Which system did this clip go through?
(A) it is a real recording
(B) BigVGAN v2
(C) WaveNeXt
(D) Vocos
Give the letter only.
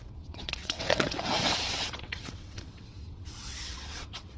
C